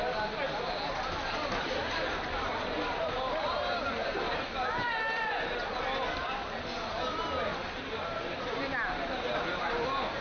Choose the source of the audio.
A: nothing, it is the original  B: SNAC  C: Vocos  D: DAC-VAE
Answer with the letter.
A